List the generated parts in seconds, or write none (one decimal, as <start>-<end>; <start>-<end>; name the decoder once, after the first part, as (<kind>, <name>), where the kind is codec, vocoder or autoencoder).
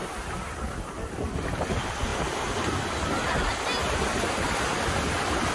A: none